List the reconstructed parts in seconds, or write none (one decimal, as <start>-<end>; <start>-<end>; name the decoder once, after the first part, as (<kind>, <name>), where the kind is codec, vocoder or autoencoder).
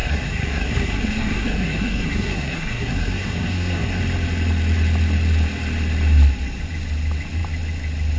0.0-4.0 (codec, SNAC)